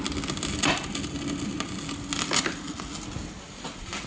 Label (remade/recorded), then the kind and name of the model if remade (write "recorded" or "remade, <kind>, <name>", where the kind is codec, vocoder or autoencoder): recorded